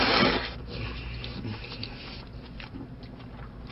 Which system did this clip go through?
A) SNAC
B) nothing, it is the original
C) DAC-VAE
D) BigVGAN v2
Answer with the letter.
B